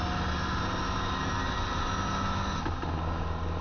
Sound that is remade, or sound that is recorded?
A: recorded